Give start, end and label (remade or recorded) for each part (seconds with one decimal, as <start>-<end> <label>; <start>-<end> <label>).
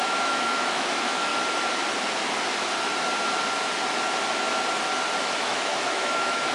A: 0.0-1.3 remade; 1.3-5.2 recorded; 5.2-6.5 remade